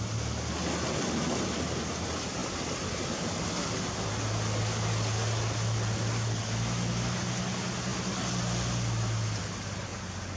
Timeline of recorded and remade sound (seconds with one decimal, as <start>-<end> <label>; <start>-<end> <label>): 0.0-10.4 recorded